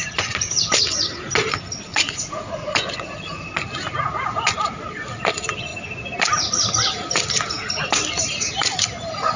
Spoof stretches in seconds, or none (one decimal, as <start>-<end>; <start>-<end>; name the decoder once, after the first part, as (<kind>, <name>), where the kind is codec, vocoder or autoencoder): 1.9-3.5 (vocoder, Vocos)